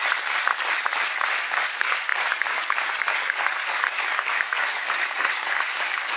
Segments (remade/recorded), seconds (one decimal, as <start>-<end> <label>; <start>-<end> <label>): 0.0-0.5 remade; 0.5-1.6 recorded; 1.6-6.2 remade